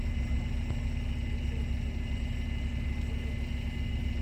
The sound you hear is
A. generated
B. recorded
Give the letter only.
B